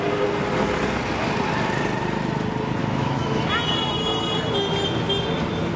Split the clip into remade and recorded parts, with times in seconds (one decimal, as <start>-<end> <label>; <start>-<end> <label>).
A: 0.0-2.8 recorded; 2.8-3.4 remade; 3.4-5.8 recorded